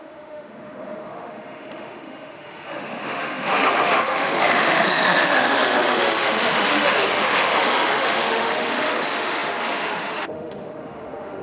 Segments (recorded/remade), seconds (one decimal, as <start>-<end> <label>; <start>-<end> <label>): 0.0-11.4 remade